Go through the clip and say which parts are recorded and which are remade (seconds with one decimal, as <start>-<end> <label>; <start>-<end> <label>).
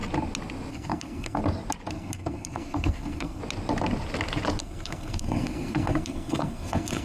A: 0.0-0.7 recorded; 0.7-1.4 remade; 1.4-1.9 recorded; 1.9-3.4 remade; 3.4-4.6 recorded; 4.6-7.0 remade